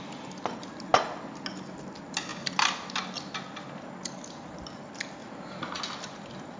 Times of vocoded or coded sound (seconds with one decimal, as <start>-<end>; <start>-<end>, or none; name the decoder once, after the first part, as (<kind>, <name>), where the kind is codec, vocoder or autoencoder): 5.2-5.8 (vocoder, Vocos)